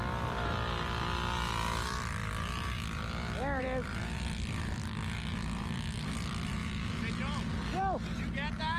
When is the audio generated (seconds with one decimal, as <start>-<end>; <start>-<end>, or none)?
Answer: 0.0-2.2; 3.6-6.6